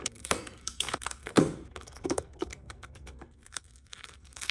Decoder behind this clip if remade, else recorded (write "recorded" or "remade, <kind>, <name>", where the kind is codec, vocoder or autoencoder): remade, codec, SNAC